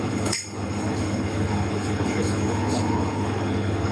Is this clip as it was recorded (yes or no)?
no